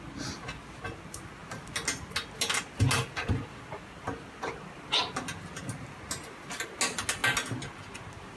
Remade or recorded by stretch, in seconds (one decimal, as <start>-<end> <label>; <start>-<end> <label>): 0.0-8.4 recorded

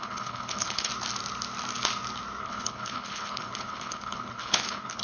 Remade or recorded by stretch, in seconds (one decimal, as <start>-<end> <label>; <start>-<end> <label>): 0.0-0.9 remade; 0.9-2.4 recorded; 2.4-5.0 remade

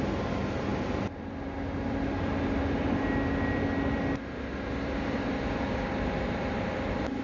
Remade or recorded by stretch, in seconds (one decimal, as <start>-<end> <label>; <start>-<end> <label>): 0.0-7.2 recorded

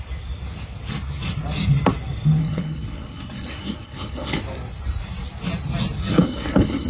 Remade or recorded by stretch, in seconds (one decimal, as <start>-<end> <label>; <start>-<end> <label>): 0.0-2.4 recorded; 2.4-4.4 remade; 4.4-6.1 recorded; 6.1-6.9 remade

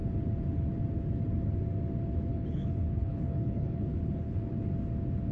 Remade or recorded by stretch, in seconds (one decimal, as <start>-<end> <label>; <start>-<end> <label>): 0.0-2.3 recorded; 2.3-4.4 remade; 4.4-5.3 recorded

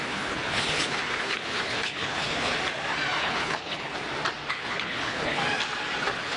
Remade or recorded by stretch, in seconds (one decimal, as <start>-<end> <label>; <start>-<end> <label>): 0.0-2.5 remade; 2.5-3.2 recorded; 3.2-3.9 remade; 3.9-4.5 recorded; 4.5-5.4 remade; 5.4-6.0 recorded; 6.0-6.4 remade

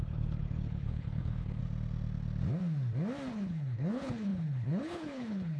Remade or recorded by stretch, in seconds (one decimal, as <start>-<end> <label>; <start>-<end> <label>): 0.0-1.6 remade; 1.6-3.3 recorded; 3.3-5.6 remade